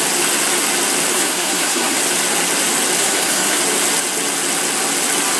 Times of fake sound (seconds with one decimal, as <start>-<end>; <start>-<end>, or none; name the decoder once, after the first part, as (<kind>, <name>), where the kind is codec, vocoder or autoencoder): 1.1-2.0 (codec, SNAC); 3.0-3.6